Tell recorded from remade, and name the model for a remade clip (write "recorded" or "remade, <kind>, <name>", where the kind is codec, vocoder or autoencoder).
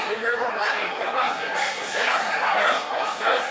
remade, codec, SNAC